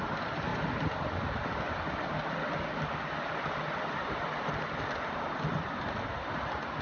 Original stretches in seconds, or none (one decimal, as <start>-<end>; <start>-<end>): 0.0-6.8